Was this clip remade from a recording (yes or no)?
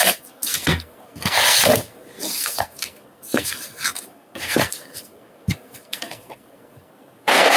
yes